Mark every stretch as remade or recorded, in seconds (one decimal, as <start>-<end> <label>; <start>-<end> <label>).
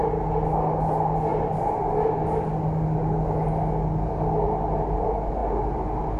0.0-6.2 recorded